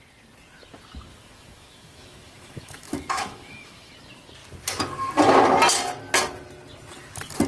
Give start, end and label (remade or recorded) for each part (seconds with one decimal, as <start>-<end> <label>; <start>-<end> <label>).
0.0-1.1 recorded; 1.1-3.9 remade; 3.9-7.5 recorded